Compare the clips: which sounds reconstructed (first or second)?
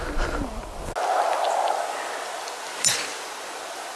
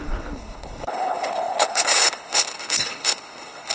second